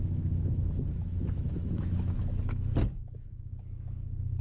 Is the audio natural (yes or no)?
no